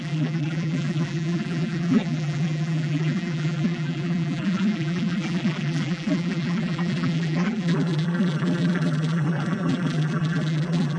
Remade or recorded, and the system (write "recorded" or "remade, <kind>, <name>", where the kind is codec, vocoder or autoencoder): remade, vocoder, BigVGAN v2